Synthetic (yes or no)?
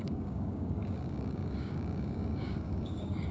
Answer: yes